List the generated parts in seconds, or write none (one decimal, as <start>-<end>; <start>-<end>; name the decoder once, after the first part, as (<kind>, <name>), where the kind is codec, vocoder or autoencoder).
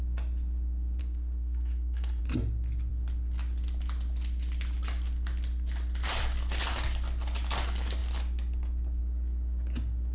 1.0-2.2 (codec, SNAC)